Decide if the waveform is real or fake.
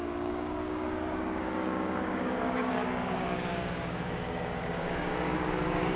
fake